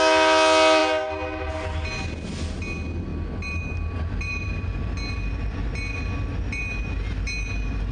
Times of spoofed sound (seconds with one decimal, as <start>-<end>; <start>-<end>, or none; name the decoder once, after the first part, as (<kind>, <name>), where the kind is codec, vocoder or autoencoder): none